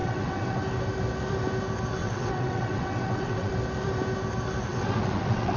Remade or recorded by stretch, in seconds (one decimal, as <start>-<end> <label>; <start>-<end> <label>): 0.0-0.6 remade; 0.6-2.0 recorded; 2.0-3.5 remade; 3.5-4.7 recorded; 4.7-5.6 remade